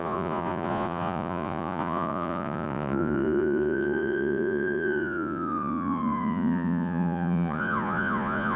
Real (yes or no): no